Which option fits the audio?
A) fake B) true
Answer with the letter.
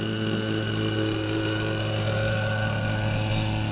B